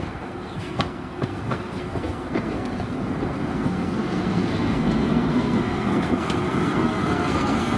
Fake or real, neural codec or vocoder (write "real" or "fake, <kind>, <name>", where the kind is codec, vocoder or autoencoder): fake, codec, SNAC